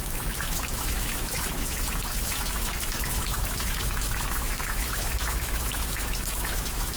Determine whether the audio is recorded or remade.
remade